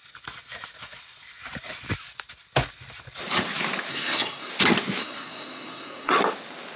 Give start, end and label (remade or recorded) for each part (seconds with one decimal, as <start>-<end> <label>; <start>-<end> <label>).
0.0-3.9 recorded; 3.9-4.5 remade; 4.5-5.0 recorded; 5.0-6.1 remade; 6.1-6.8 recorded